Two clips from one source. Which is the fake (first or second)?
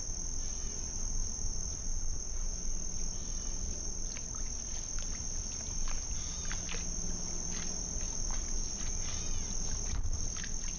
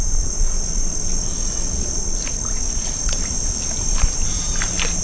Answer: second